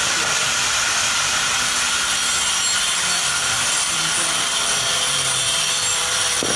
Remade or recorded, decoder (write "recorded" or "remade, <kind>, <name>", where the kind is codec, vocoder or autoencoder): remade, vocoder, BigVGAN v2